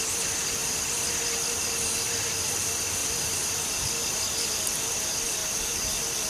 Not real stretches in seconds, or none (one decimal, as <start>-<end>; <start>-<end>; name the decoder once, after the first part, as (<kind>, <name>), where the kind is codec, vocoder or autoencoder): 3.0-3.8 (vocoder, BigVGAN v2)